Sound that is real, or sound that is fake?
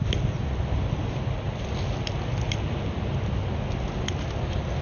real